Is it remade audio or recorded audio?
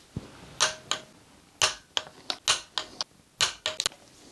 recorded